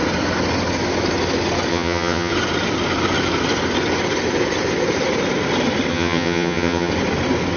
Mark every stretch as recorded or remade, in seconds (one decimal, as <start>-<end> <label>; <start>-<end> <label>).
0.0-1.7 recorded; 1.7-2.3 remade; 2.3-5.9 recorded; 5.9-6.9 remade; 6.9-7.6 recorded